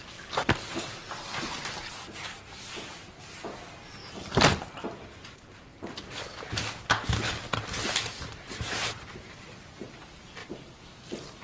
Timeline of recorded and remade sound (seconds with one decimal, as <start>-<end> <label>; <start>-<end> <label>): 0.0-11.4 recorded